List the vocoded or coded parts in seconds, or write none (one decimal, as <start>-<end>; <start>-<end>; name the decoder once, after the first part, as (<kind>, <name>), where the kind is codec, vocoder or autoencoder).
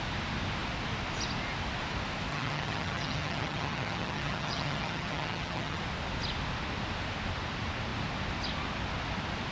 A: 2.3-5.8 (vocoder, HiFi-GAN)